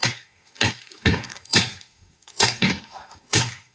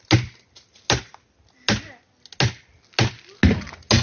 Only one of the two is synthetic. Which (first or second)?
first